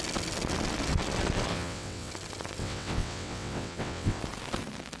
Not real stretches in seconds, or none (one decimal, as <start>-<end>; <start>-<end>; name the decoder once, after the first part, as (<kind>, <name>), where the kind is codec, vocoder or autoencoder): 1.5-2.1 (vocoder, WaveNeXt); 2.6-4.2